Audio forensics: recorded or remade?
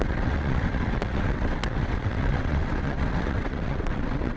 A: remade